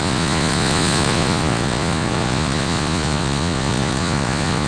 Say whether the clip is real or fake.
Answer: fake